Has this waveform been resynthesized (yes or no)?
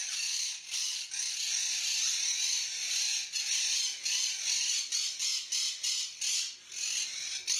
no